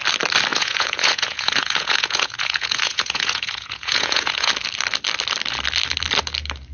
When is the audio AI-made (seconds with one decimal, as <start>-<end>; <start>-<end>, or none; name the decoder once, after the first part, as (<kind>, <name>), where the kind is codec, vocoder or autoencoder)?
0.5-4.5 (vocoder, Vocos)